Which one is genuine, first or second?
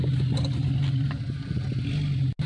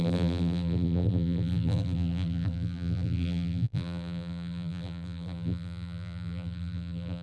first